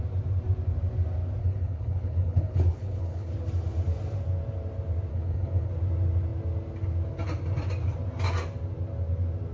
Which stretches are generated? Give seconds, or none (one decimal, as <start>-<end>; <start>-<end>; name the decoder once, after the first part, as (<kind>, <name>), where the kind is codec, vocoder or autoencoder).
1.4-3.3 (codec, HILCodec); 5.1-5.7

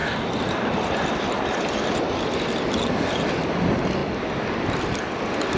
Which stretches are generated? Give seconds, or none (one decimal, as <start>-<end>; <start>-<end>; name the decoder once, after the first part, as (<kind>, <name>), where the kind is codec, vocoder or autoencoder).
none